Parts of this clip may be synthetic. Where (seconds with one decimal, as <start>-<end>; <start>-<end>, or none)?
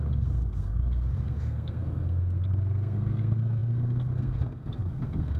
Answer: 0.0-5.4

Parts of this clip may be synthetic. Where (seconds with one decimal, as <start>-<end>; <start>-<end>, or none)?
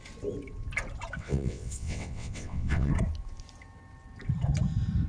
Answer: 1.2-2.9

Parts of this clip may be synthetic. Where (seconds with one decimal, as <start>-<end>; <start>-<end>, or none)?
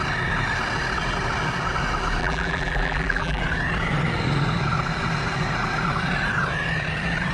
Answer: 2.2-3.4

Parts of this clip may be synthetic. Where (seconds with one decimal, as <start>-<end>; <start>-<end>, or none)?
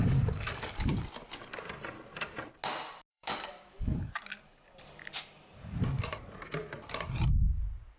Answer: 0.0-0.9; 3.1-4.1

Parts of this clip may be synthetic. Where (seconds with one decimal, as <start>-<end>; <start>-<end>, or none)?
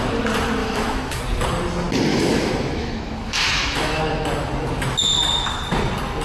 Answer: 0.6-1.2; 2.1-4.0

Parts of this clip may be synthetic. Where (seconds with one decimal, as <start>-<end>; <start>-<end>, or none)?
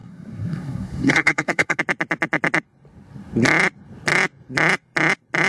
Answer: 0.0-1.8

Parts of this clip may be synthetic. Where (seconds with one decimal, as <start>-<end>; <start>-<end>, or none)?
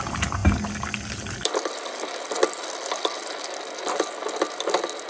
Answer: none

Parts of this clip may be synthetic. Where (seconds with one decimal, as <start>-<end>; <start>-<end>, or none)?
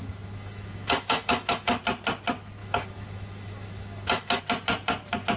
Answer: 0.0-1.8; 2.6-4.4